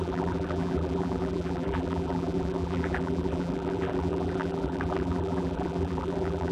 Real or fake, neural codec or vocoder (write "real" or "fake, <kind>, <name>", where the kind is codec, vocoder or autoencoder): fake, vocoder, BigVGAN v2